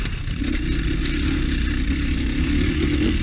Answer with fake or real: real